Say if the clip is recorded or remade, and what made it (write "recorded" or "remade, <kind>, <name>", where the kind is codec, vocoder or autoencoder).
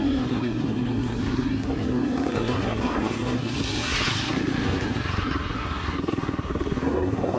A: remade, codec, SNAC